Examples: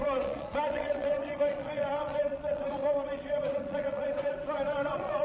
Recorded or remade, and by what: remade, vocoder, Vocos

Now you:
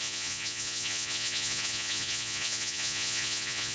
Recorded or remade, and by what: remade, vocoder, Vocos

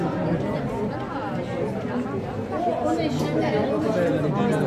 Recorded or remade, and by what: recorded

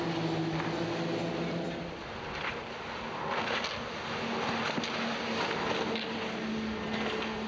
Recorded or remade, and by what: recorded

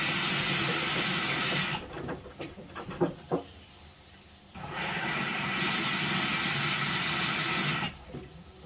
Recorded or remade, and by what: recorded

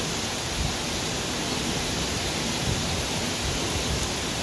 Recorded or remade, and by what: recorded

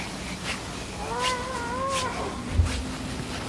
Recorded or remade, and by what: recorded